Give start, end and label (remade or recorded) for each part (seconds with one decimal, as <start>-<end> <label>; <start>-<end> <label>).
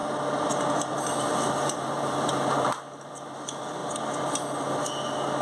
0.0-0.9 recorded; 0.9-3.1 remade; 3.1-5.4 recorded